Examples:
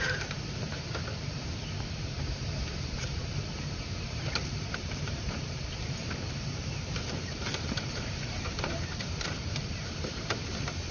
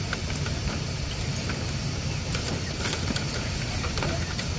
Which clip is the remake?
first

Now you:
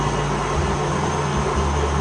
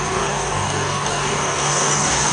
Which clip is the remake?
second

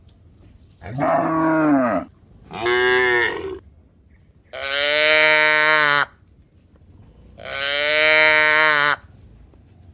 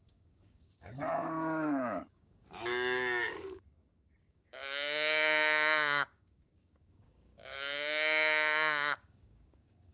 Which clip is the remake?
second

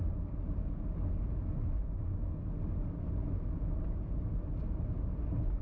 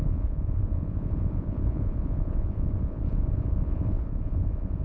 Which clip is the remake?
second